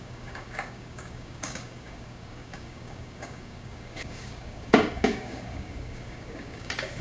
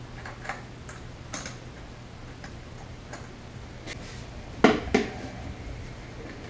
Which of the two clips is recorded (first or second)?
second